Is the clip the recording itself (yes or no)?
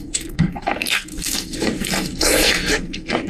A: no